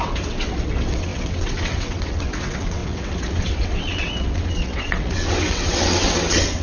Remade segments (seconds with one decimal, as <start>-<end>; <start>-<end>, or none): 0.0-6.6